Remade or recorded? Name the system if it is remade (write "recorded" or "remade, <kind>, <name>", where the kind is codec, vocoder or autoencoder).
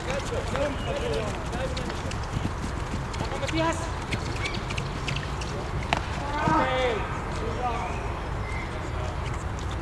recorded